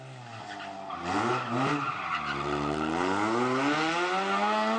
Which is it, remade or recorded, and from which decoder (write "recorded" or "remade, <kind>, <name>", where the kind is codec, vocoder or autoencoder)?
recorded